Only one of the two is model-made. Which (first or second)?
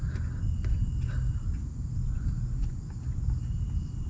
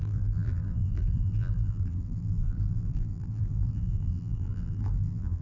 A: second